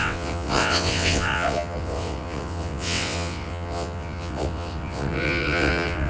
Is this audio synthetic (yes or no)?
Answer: yes